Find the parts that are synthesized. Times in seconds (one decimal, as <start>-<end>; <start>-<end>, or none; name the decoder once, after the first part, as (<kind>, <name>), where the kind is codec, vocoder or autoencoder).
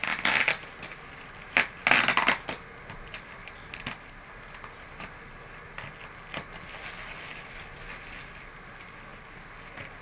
none